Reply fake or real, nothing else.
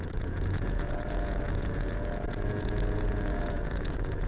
fake